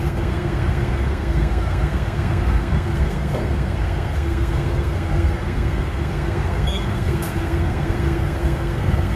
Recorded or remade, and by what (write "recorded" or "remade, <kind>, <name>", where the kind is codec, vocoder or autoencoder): remade, codec, SNAC